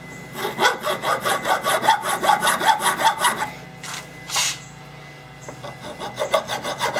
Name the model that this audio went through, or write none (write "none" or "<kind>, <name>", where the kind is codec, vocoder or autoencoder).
none